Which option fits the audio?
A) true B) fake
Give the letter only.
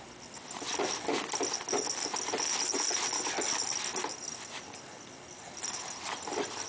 A